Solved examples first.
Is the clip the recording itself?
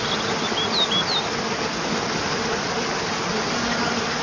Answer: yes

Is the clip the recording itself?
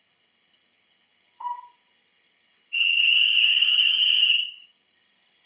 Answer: no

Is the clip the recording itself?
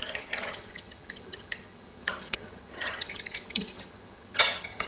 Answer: no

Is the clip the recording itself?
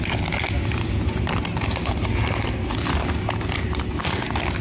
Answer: yes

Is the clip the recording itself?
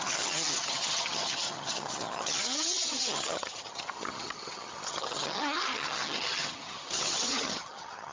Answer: no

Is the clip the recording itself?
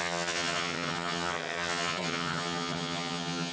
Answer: no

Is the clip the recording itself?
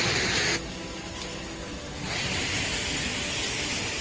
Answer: yes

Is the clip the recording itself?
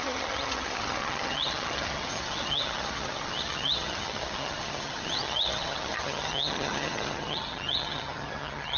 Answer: no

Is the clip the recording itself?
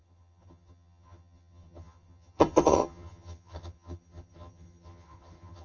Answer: no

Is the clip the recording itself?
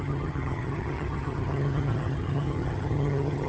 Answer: no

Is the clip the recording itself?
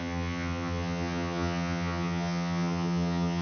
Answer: no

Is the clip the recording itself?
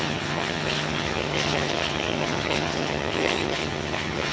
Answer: no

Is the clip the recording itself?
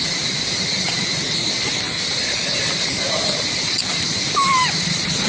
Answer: yes